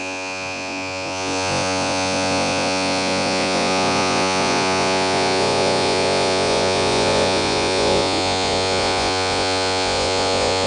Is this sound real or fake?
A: fake